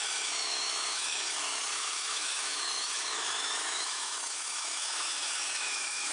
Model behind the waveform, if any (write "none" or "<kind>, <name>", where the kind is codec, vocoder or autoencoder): autoencoder, DAC-VAE